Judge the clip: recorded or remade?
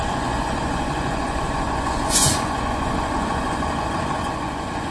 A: remade